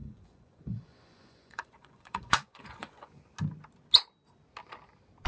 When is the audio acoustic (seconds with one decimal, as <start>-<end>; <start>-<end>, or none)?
3.2-5.3